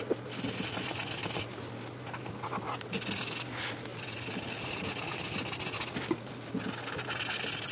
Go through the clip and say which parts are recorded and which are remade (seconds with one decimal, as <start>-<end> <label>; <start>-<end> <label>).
0.0-7.7 recorded